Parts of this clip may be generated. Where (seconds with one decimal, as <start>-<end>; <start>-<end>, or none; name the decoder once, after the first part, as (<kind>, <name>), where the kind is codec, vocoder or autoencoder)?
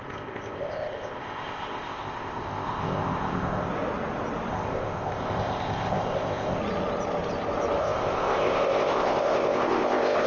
0.0-3.7 (codec, ZipCodec); 4.5-6.6; 7.8-10.3